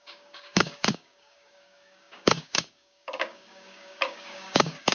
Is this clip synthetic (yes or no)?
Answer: yes